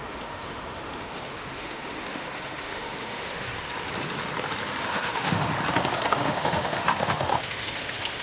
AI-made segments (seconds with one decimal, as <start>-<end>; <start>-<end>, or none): 0.0-3.5; 4.8-5.5; 6.1-8.2